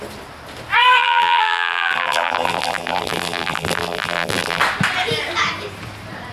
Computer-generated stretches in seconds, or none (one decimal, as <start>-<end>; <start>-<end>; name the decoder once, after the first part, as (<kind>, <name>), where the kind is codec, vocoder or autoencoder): 1.0-4.6 (vocoder, BigVGAN v2)